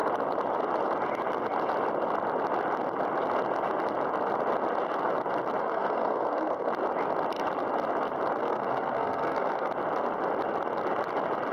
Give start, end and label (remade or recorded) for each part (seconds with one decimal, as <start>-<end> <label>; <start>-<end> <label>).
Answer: 0.0-5.6 recorded; 5.6-6.7 remade; 6.7-8.4 recorded; 8.4-9.7 remade; 9.7-11.5 recorded